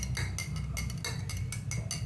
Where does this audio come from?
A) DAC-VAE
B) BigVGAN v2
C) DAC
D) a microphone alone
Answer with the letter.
D